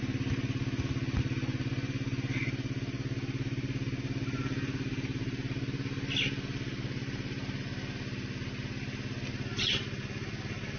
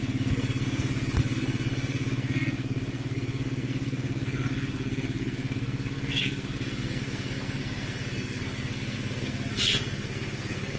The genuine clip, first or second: first